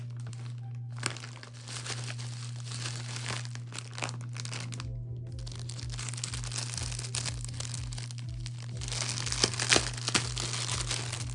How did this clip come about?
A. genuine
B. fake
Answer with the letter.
A